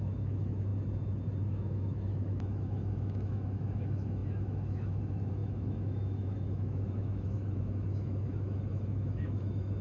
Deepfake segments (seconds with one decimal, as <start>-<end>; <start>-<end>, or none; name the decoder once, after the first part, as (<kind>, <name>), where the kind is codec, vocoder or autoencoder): 0.0-0.7 (autoencoder, DAC-VAE); 1.4-9.8